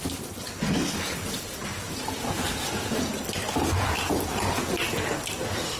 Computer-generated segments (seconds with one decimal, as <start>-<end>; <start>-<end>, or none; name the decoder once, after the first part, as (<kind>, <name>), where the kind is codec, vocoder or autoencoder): none